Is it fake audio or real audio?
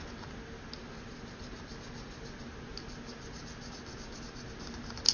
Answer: real